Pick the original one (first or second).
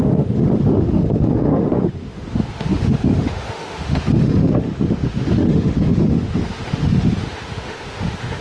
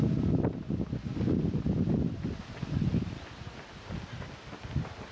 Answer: second